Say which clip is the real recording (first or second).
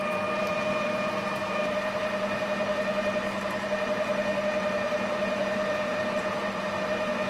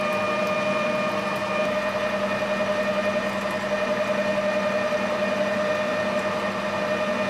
second